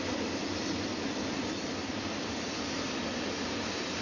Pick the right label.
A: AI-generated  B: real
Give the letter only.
B